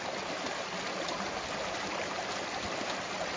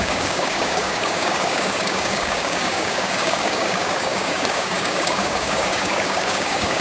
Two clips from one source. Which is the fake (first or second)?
second